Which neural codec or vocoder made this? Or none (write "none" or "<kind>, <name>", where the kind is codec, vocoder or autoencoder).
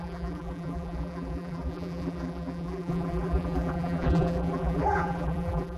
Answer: vocoder, BigVGAN v2